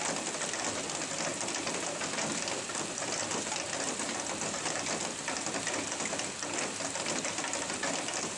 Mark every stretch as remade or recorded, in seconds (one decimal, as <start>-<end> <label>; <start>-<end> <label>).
0.0-1.3 recorded; 1.3-4.9 remade; 4.9-8.4 recorded